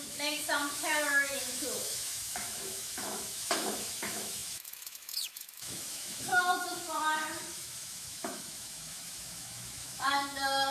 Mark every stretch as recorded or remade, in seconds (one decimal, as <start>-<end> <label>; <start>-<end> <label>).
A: 0.0-10.7 remade